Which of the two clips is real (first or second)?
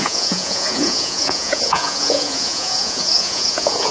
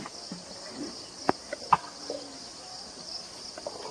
second